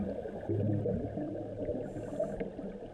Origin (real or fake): real